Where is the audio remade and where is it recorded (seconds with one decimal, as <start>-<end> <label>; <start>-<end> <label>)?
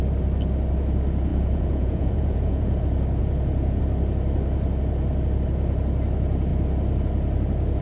0.0-1.3 recorded; 1.3-2.8 remade; 2.8-3.2 recorded; 3.2-3.8 remade; 3.8-7.8 recorded